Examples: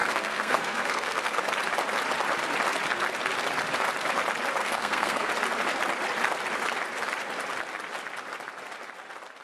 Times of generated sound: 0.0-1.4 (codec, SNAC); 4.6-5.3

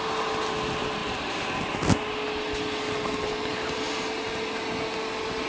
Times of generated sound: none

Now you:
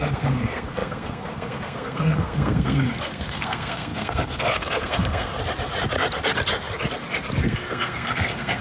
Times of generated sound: 0.0-5.3 (codec, SNAC); 7.4-8.6

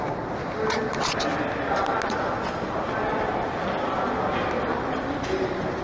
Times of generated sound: none